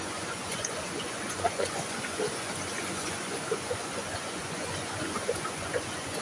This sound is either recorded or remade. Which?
remade